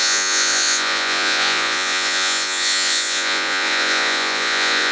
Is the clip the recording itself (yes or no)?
no